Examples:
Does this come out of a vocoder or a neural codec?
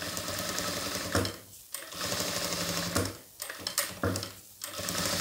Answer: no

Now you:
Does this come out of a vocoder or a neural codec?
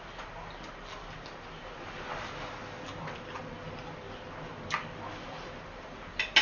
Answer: no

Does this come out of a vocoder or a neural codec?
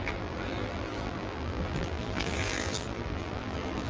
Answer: yes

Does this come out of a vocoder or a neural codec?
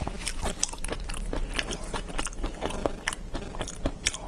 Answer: yes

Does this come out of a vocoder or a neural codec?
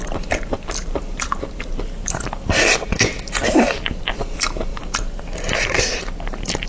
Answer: no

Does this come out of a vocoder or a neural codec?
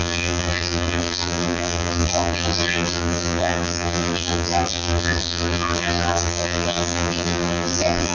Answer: yes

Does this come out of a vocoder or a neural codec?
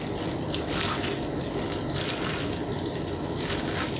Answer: no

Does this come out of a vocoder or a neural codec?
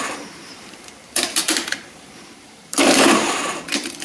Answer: yes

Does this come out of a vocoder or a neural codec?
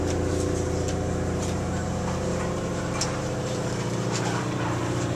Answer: yes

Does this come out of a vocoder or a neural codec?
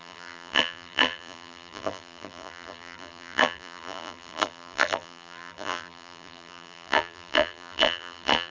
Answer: yes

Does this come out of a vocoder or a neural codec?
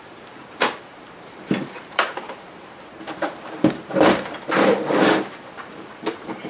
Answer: yes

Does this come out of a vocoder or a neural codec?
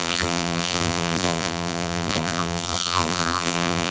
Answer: yes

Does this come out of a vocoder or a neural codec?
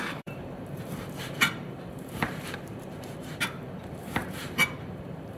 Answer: yes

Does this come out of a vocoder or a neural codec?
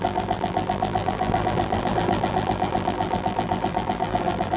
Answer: yes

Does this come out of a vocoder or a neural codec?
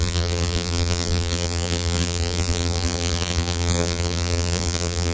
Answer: yes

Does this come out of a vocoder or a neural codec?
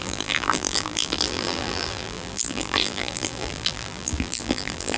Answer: yes